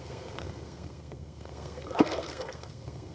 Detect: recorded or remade remade